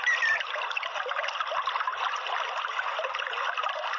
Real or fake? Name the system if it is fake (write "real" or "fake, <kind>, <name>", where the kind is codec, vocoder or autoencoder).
fake, vocoder, BigVGAN v2